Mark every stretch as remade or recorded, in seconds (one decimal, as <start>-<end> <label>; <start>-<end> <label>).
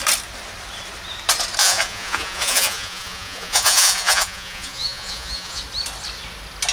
0.0-1.6 recorded; 1.6-5.6 remade; 5.6-6.7 recorded